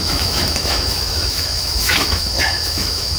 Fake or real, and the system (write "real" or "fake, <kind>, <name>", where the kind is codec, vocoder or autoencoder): fake, autoencoder, DAC-VAE